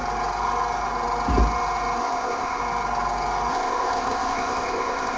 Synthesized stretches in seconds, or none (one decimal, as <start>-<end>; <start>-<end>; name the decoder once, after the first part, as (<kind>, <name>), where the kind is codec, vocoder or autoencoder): 2.0-2.6 (codec, ZipCodec); 3.5-5.2